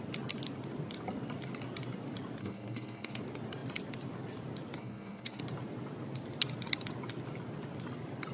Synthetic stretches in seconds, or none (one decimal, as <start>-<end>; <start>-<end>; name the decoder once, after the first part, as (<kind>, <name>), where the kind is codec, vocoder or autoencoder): 2.4-3.2 (codec, SNAC); 4.8-5.4